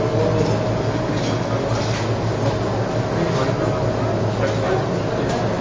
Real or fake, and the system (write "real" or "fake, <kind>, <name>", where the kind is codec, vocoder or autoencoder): real